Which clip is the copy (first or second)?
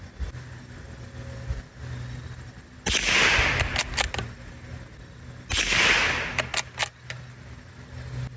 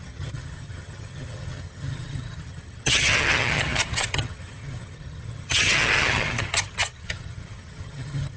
second